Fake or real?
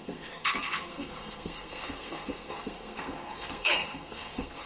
fake